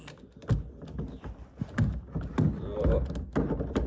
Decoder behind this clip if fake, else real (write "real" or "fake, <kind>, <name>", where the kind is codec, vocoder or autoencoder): real